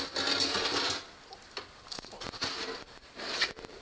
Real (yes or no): yes